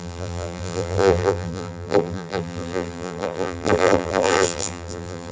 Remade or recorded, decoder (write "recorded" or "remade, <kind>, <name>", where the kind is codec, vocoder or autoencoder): remade, vocoder, BigVGAN v2